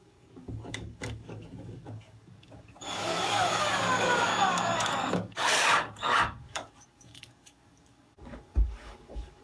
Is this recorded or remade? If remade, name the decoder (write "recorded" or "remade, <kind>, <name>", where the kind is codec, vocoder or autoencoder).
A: remade, codec, DAC